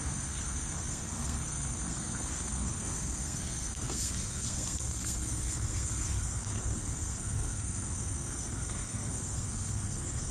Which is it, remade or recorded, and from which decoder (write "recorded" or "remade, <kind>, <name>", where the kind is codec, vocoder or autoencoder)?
remade, codec, SNAC